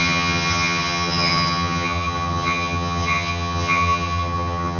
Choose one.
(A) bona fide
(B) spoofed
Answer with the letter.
B